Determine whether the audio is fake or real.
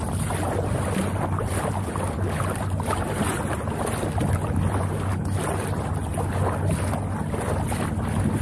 real